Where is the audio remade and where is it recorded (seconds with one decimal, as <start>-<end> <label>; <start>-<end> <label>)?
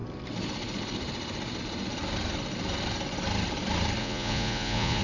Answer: 0.0-4.0 recorded; 4.0-5.0 remade